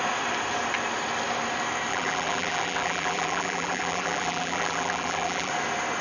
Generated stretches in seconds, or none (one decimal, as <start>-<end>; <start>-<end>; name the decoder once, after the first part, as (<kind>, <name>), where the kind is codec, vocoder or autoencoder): 1.9-5.5 (vocoder, BigVGAN v2)